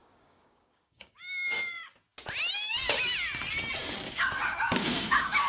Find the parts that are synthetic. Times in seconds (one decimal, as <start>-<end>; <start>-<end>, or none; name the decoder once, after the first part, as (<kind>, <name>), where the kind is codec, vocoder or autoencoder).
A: 0.0-1.7 (codec, DAC); 4.8-5.5

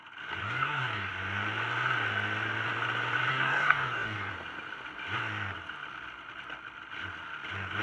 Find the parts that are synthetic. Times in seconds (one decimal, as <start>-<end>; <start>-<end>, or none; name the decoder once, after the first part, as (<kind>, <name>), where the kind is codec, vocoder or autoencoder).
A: 0.4-1.1 (codec, DAC); 3.3-4.3

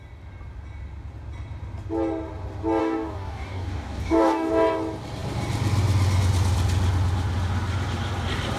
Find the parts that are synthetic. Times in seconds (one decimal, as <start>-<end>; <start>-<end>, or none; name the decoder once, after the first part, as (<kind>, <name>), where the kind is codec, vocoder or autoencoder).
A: 2.8-4.5 (codec, DAC)

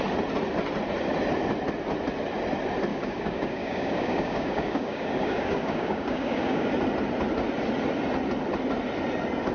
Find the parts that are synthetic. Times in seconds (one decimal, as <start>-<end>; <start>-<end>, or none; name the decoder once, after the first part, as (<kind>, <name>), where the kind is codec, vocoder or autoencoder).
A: 2.9-6.7 (codec, DAC)